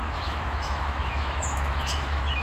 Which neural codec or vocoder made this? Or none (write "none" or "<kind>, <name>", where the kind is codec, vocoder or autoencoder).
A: autoencoder, DAC-VAE